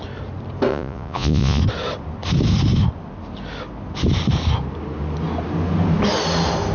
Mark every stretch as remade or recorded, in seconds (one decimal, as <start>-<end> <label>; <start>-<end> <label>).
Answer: 0.0-0.7 recorded; 0.7-1.6 remade; 1.6-6.7 recorded